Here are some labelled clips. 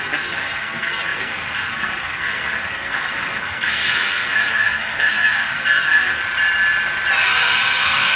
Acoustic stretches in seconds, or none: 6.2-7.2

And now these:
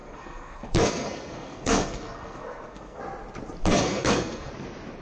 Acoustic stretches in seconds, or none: 3.0-3.6; 4.5-5.0

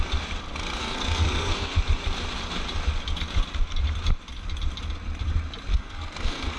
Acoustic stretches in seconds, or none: 0.0-0.8; 1.8-5.7

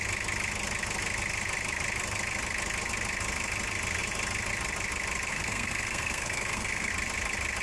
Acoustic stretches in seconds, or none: 0.0-5.3; 6.9-7.6

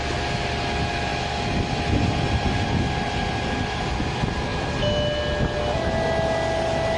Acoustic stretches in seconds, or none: 0.0-7.0

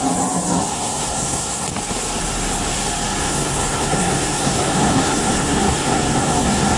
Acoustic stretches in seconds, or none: 0.0-0.7; 1.7-3.2